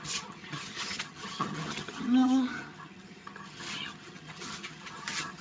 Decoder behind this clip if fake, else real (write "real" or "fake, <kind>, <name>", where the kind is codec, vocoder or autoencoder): fake, vocoder, HiFi-GAN